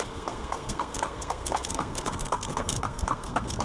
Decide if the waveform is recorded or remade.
remade